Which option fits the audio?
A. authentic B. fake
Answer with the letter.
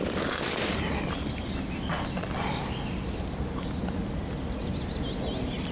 A